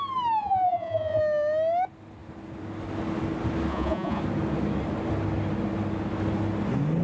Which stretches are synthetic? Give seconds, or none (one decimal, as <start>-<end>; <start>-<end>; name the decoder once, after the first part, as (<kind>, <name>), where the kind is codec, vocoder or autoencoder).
0.4-1.2 (vocoder, Vocos); 3.7-4.2

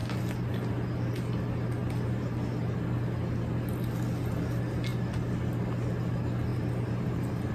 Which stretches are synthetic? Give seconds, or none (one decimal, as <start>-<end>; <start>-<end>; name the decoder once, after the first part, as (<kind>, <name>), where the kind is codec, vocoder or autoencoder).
6.5-7.5 (vocoder, BigVGAN v2)

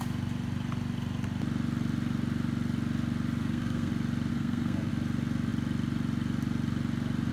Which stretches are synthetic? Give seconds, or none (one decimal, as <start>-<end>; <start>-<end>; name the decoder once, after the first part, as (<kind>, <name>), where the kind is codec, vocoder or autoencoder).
3.4-3.9 (codec, SNAC); 4.3-4.9

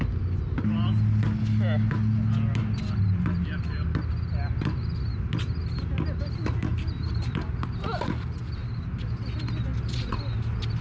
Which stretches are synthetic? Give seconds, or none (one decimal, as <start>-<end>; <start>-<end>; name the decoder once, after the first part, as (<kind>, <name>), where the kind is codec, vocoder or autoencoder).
none

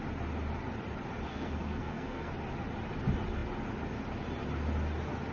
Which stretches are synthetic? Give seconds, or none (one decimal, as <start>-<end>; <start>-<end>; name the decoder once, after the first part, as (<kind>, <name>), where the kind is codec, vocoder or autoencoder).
1.3-2.3 (codec, SNAC)

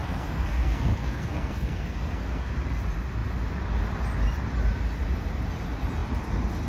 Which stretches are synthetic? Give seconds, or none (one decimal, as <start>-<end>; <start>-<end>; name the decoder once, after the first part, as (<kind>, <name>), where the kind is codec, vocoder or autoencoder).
0.0-2.5 (codec, SNAC)

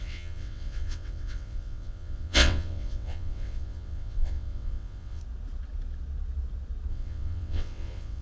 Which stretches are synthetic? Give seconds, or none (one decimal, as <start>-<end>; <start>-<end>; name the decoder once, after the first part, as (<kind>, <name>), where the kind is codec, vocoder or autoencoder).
0.0-5.2 (vocoder, WaveNeXt); 6.9-8.2